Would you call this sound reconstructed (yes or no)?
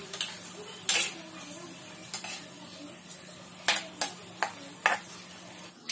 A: no